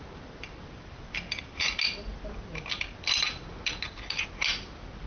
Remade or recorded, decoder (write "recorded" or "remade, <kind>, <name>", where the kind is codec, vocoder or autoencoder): recorded